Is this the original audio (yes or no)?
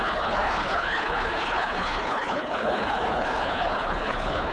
no